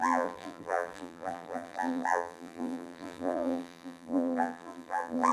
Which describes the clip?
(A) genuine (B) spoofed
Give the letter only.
B